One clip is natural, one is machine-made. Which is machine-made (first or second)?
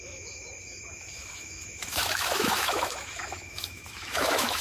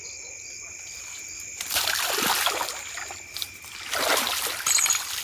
first